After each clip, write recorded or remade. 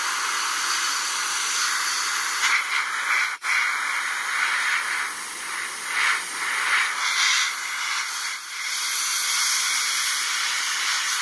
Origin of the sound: recorded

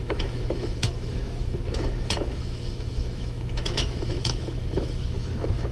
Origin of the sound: remade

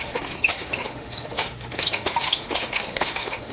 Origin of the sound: remade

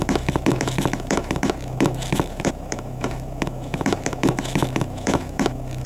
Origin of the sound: remade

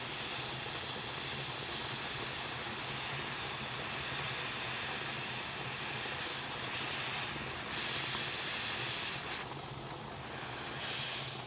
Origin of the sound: recorded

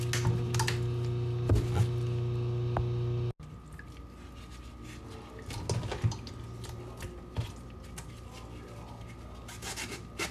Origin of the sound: recorded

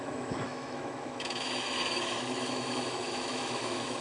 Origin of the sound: remade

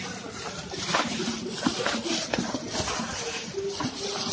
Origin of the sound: recorded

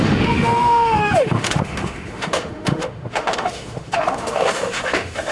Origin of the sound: remade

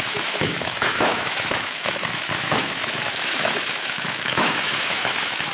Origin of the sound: remade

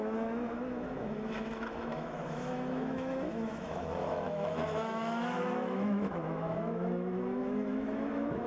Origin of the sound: remade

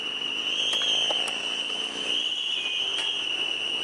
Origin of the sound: recorded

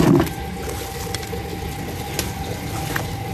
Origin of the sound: recorded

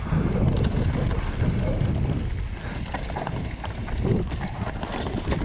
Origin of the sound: recorded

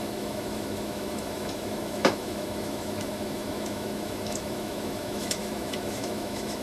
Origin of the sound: remade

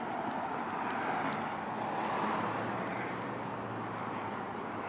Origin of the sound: recorded